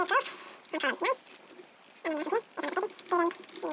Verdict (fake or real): real